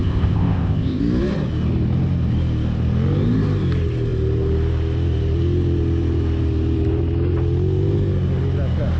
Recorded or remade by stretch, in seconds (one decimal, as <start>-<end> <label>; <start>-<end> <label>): 0.0-1.0 remade; 1.0-9.0 recorded